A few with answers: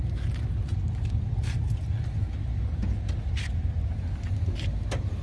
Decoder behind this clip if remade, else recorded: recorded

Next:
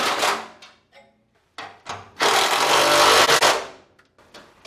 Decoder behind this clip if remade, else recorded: recorded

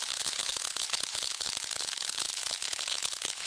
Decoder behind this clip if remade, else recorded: remade, codec, HILCodec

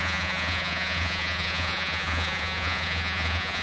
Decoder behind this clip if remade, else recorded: remade, vocoder, Vocos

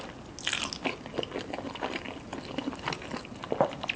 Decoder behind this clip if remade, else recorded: recorded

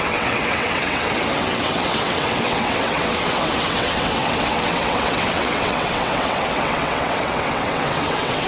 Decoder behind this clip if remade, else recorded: remade, vocoder, WaveNeXt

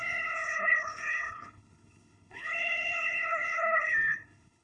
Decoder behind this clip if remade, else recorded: remade, codec, HILCodec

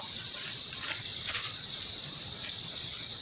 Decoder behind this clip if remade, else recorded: remade, vocoder, BigVGAN v2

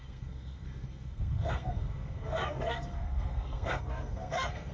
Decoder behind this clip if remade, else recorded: remade, codec, SNAC